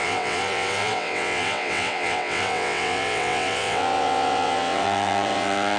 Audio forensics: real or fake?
fake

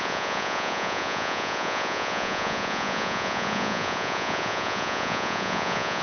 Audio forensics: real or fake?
fake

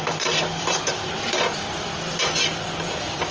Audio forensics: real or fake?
fake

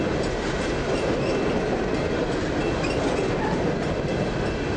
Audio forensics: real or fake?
real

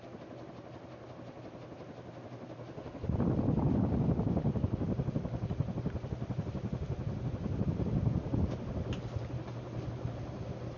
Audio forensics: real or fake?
real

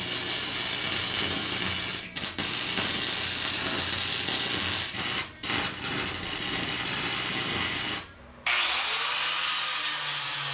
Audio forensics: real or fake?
real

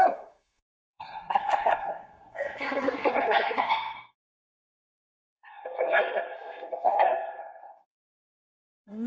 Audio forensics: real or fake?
fake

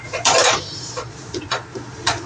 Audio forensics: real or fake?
fake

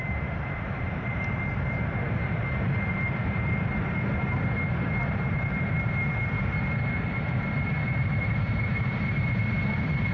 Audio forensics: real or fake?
fake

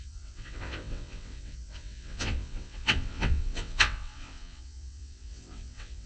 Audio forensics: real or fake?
fake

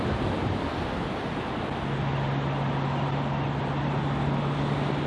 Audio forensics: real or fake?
real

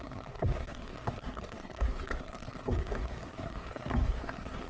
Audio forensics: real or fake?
fake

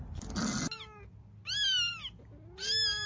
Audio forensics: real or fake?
real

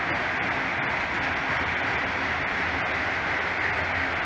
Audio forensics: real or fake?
real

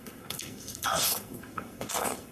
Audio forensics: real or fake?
fake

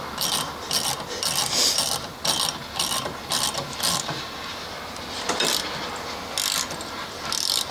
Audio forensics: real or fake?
real